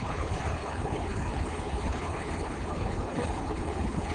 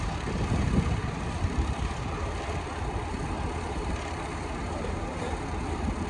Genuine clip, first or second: second